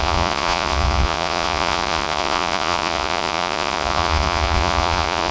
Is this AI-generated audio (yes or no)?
yes